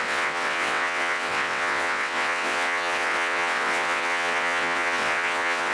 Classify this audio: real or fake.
fake